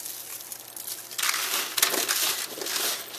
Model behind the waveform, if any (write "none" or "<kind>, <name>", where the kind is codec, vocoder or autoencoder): none